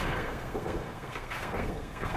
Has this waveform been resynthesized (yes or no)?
yes